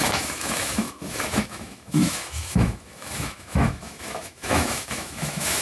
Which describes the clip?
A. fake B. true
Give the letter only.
A